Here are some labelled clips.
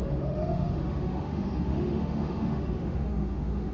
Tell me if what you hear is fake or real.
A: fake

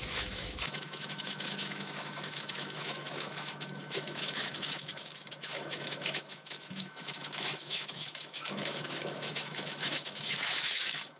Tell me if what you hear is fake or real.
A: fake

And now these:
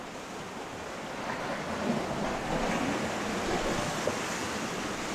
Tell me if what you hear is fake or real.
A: real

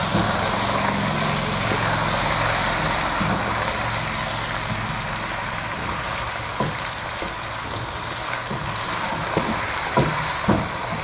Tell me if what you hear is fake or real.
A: real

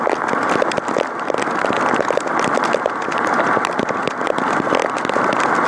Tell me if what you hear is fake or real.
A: real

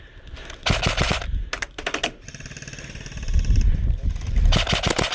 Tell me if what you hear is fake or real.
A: real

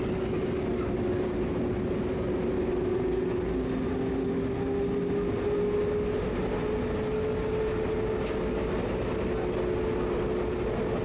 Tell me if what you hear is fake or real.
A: real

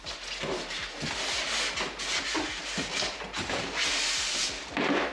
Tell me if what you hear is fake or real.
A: real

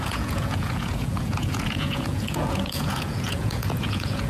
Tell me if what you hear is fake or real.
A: fake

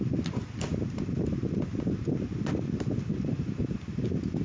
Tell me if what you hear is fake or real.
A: real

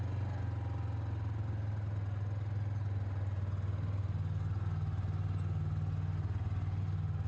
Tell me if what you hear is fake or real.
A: real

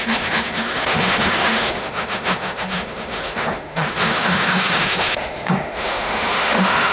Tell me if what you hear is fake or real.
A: fake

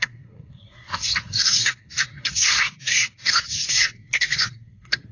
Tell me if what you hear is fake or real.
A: fake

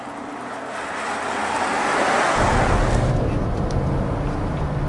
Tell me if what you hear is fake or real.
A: real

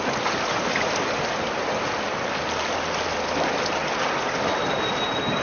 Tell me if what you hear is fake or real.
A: real